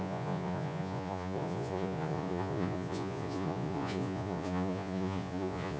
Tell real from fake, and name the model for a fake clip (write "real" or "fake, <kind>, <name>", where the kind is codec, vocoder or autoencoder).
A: fake, vocoder, Vocos